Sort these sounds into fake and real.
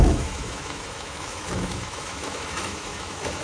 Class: fake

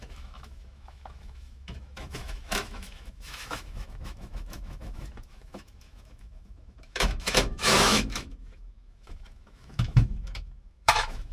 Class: fake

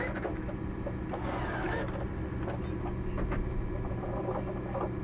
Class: real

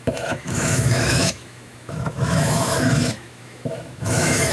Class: fake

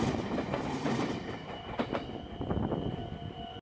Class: real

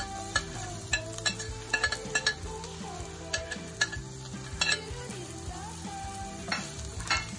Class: real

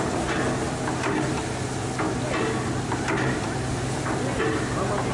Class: real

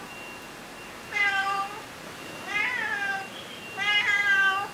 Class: real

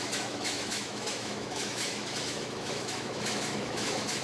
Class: fake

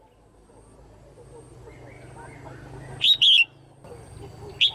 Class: real